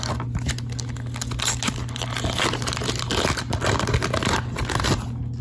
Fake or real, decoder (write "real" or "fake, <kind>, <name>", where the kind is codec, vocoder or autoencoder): real